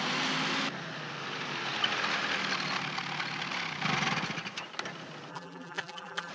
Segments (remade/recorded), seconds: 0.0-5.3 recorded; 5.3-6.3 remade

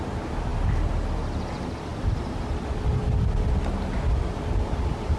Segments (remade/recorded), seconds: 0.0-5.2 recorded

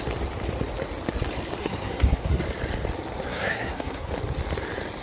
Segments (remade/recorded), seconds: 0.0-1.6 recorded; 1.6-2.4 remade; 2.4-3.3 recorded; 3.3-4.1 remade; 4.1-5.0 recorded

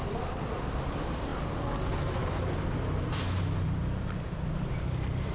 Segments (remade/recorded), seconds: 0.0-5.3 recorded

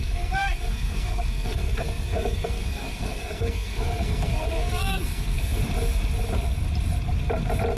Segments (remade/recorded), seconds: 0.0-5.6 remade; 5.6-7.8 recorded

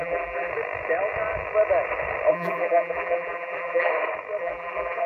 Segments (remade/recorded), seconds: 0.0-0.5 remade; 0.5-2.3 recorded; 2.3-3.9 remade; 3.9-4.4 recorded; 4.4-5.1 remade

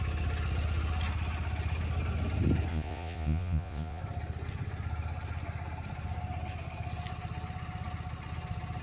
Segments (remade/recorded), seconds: 0.0-2.7 recorded; 2.7-4.0 remade; 4.0-8.8 recorded